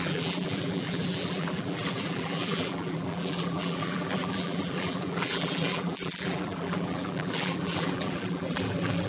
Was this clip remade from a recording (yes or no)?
yes